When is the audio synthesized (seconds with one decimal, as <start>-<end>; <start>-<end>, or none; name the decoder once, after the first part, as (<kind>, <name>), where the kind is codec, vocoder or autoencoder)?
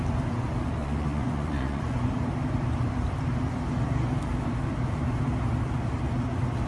0.8-2.1 (vocoder, Vocos)